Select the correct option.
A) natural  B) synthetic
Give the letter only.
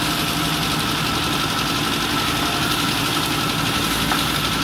A